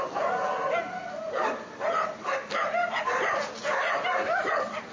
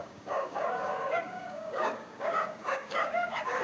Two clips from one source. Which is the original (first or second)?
first